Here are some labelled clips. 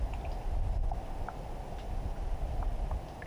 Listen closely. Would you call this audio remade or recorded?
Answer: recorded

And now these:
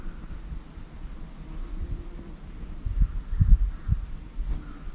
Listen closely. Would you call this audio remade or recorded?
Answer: recorded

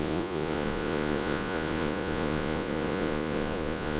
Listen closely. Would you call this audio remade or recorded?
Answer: remade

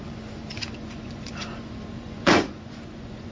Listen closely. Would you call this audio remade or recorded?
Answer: remade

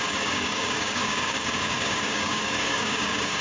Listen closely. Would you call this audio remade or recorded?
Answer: remade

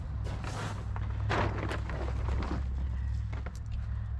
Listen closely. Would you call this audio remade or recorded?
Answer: recorded